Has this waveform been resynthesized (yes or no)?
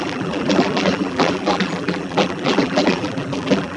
yes